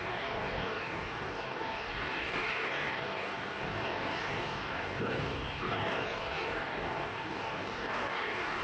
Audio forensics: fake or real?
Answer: fake